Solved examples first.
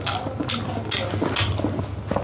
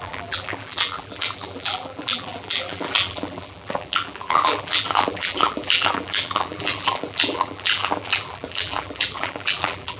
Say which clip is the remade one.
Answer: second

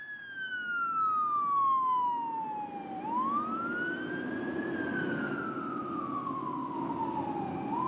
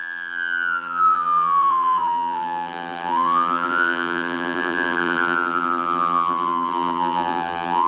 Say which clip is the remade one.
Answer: second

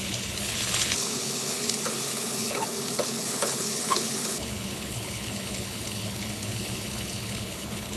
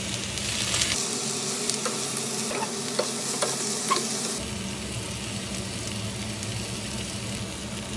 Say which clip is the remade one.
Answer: first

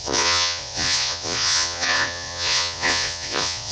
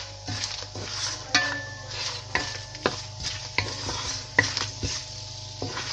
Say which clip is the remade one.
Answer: first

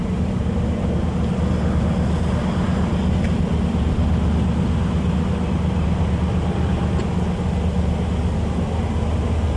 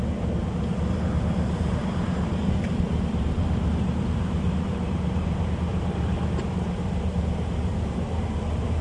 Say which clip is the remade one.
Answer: second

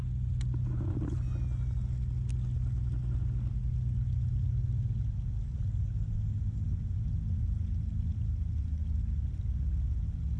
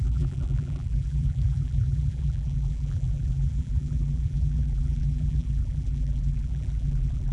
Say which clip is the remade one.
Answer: second